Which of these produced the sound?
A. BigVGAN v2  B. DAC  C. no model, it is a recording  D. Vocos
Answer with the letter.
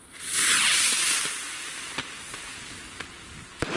C